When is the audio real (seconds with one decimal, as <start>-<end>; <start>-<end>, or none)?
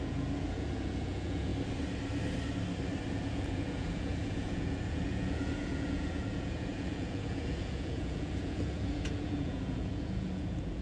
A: 1.5-3.1